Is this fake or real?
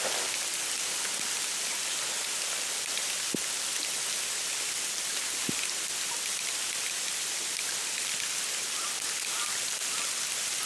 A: real